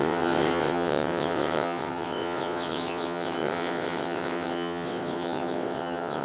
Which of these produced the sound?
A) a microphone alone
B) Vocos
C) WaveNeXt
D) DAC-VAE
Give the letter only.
C